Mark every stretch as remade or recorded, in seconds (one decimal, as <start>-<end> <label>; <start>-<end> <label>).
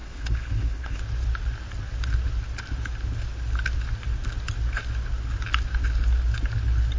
0.0-1.0 remade; 1.0-7.0 recorded